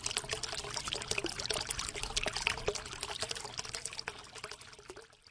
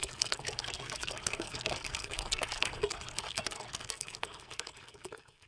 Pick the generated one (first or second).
second